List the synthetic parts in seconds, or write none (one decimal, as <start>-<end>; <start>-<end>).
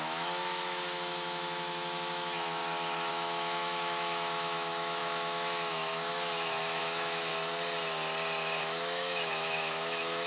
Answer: 0.0-2.6; 3.1-7.3; 8.6-10.3